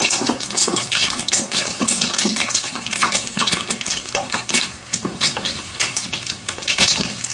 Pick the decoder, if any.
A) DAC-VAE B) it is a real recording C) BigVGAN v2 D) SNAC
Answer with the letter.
D